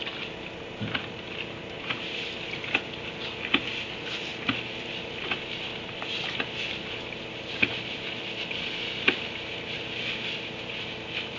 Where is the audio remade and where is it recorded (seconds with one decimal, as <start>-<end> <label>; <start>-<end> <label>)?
0.0-11.4 recorded